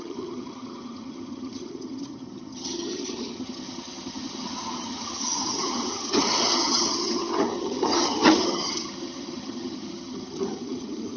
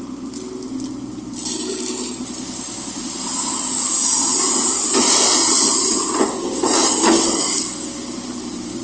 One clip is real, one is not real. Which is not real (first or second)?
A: first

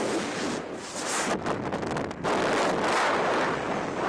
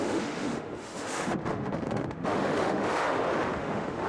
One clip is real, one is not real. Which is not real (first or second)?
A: second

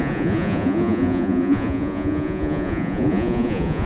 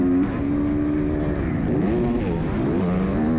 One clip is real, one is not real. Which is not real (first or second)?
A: first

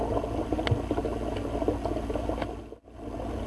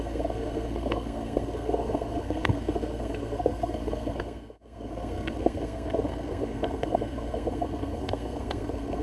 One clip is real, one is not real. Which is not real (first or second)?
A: second